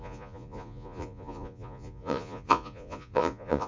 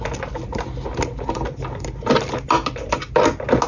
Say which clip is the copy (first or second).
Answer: first